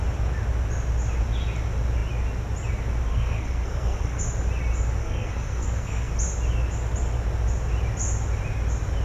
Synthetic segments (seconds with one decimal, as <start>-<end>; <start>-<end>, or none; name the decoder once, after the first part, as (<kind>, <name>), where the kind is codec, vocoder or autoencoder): 3.1-4.2 (codec, SNAC); 5.0-6.1